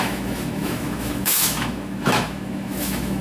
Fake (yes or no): yes